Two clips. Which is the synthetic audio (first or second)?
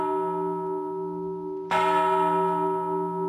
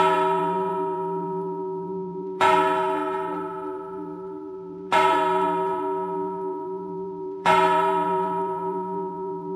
second